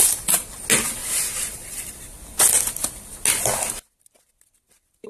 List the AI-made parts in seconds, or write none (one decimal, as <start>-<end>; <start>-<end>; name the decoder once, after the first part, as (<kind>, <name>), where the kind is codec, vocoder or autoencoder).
1.0-2.2 (vocoder, BigVGAN v2)